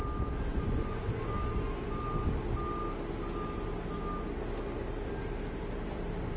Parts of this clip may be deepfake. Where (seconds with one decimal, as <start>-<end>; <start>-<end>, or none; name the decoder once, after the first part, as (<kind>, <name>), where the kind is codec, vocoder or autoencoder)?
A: 0.5-1.1 (vocoder, Vocos)